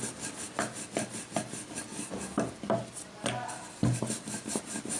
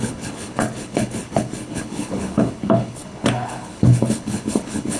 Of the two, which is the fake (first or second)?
second